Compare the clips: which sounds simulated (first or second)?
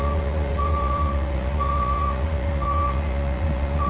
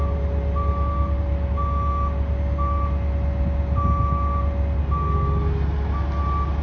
first